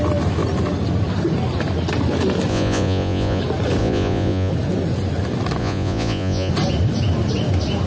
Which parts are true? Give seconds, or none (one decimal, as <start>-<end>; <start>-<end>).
0.0-2.5; 3.4-3.8; 4.5-5.6; 6.5-7.9